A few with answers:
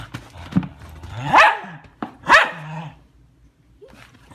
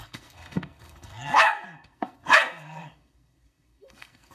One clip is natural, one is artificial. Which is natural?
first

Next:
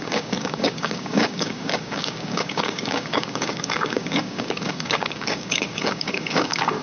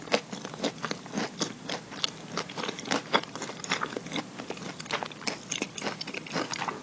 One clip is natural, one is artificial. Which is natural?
second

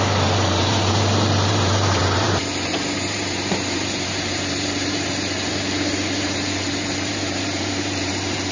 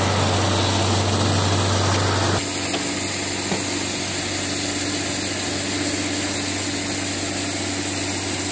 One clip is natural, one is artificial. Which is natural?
second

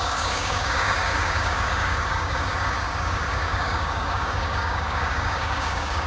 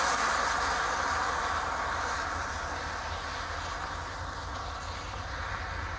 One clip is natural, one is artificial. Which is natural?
second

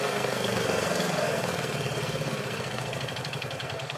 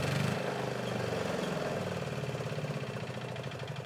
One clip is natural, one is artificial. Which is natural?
second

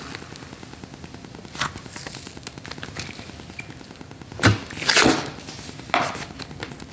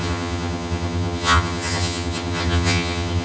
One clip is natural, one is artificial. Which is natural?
first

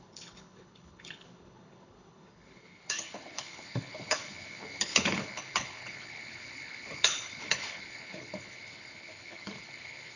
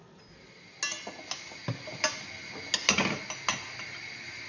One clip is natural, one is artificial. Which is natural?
second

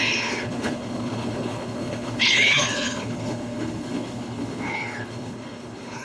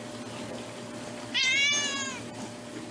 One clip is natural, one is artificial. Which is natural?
second